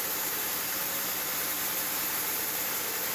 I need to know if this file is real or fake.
fake